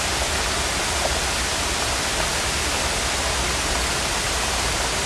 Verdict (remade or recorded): recorded